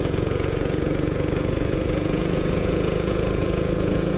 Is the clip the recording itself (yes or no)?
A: no